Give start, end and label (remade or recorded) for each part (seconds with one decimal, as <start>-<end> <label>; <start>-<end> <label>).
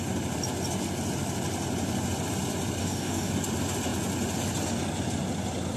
0.0-2.8 recorded; 2.8-3.3 remade; 3.3-5.8 recorded